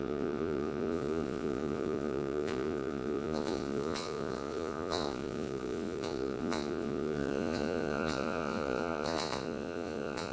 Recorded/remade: remade